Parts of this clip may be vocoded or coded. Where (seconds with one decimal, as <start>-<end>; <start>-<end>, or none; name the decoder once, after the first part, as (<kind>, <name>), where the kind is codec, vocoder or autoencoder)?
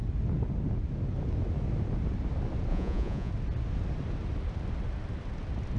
2.7-3.3 (vocoder, Vocos)